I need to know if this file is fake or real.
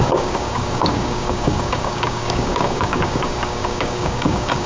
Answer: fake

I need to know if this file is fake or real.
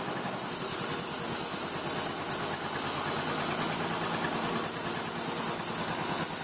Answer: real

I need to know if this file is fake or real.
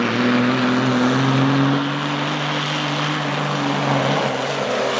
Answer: real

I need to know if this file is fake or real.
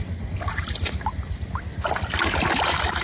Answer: fake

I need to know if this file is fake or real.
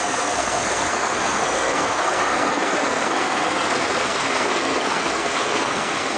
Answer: fake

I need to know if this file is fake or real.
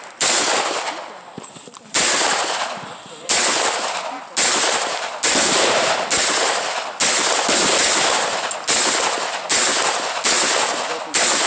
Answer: real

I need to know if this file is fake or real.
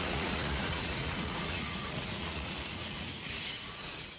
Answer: fake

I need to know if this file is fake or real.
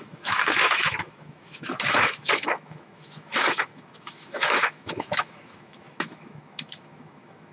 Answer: fake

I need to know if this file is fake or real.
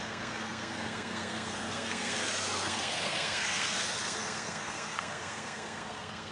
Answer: fake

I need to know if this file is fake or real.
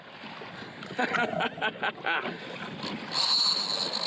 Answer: real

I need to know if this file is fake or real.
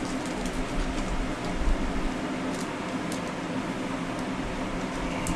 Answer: real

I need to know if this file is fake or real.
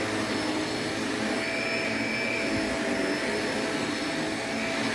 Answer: real